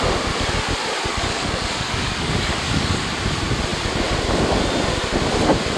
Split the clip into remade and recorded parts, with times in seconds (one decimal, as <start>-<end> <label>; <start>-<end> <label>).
0.0-1.1 recorded; 1.1-3.0 remade; 3.0-5.8 recorded